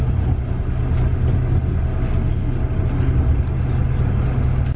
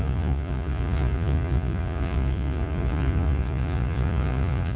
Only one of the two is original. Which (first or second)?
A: first